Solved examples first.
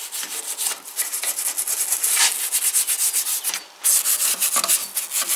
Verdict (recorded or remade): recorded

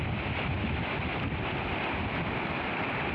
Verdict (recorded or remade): recorded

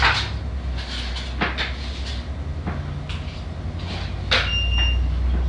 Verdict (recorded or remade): recorded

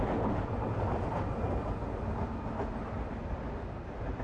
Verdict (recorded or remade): recorded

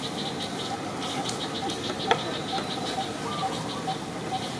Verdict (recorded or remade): recorded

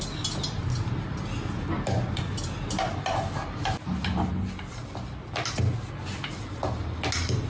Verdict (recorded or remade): recorded